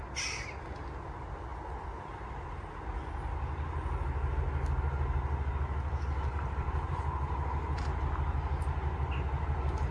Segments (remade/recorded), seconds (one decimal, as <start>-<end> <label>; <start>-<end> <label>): 0.0-6.3 recorded; 6.3-7.0 remade; 7.0-9.9 recorded